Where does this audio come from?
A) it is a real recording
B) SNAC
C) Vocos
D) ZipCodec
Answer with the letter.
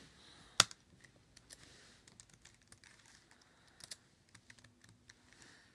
A